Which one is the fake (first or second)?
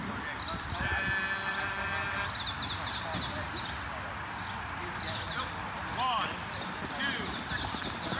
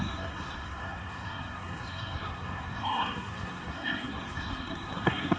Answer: second